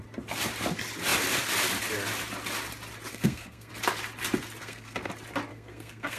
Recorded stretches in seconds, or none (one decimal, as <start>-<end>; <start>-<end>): 0.0-3.1; 3.7-4.6; 5.1-5.5